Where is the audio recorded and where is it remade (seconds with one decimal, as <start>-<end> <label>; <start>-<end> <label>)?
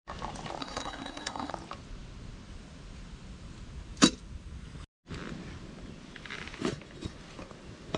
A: 0.0-0.6 recorded; 0.6-1.5 remade; 1.5-8.0 recorded